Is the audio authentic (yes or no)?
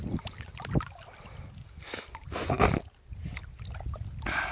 yes